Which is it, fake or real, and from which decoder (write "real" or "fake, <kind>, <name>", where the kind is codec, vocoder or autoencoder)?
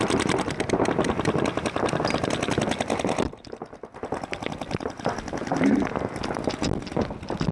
real